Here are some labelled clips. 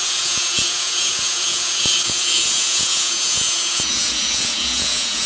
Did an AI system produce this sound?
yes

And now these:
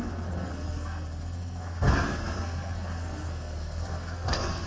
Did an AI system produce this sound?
yes